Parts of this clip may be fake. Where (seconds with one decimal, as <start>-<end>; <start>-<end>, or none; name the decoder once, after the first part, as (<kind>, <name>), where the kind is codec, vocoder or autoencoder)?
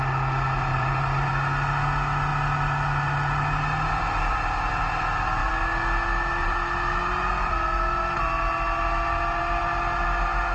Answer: 0.7-1.3 (vocoder, BigVGAN v2)